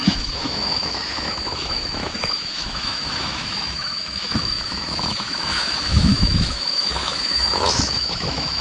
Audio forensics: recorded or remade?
remade